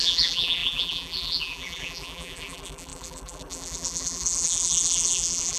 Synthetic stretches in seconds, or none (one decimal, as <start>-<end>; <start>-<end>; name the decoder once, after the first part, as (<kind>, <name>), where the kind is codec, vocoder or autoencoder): 0.0-5.6 (vocoder, BigVGAN v2)